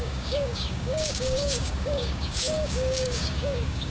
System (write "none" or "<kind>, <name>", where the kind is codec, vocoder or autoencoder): codec, DAC